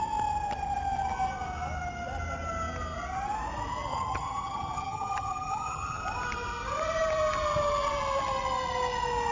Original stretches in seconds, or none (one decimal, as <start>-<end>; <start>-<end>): 0.0-3.9; 6.0-9.3